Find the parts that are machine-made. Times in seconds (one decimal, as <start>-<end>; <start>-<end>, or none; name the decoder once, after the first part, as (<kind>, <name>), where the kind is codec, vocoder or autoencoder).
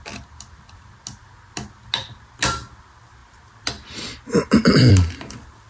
none